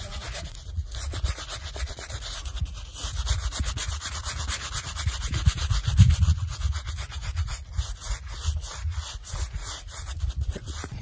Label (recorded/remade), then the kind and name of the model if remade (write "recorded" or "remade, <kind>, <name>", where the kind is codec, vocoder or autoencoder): remade, vocoder, Vocos